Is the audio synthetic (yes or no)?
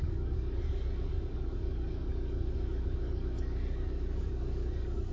yes